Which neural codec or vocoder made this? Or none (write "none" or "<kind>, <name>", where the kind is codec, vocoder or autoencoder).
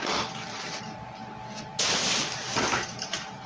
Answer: none